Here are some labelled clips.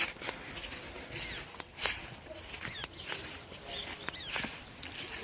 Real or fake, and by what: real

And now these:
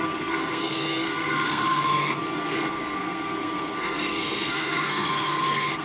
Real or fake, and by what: fake, codec, SNAC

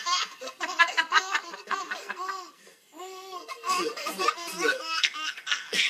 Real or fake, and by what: fake, codec, SNAC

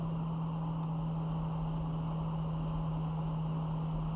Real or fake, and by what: real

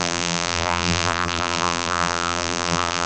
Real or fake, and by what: fake, vocoder, BigVGAN v2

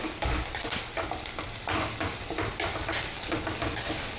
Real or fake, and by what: real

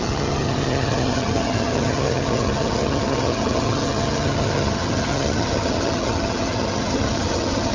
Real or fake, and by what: fake, vocoder, HiFi-GAN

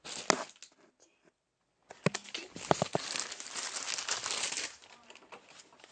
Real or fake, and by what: real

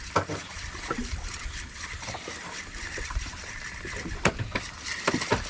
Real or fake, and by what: real